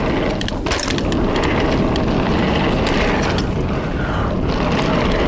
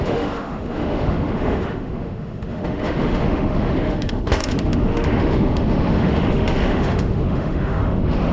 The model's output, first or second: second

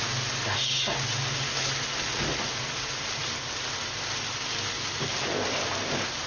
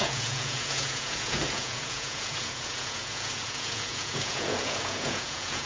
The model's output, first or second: second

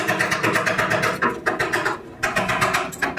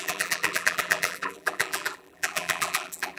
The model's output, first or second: second